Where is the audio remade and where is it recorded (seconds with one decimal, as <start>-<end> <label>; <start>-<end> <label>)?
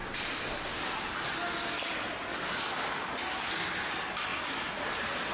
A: 0.0-1.1 remade; 1.1-5.3 recorded